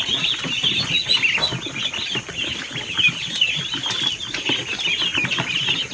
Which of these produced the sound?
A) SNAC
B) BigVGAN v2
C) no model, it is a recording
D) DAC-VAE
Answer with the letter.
C